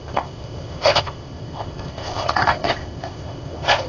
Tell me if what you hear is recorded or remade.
remade